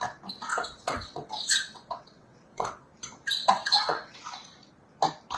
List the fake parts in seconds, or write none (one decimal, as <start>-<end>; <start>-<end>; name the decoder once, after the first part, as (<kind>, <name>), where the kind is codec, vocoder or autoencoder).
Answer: 0.5-2.9 (vocoder, WaveNeXt); 3.4-4.2